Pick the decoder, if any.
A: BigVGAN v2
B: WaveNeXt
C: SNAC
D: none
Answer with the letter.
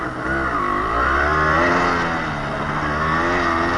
D